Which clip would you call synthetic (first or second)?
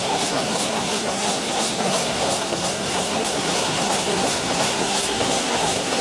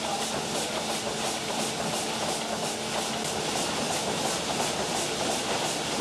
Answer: first